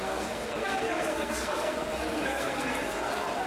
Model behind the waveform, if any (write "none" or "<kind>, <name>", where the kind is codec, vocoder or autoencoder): codec, SNAC